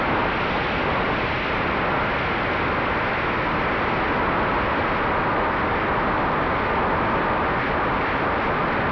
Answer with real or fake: real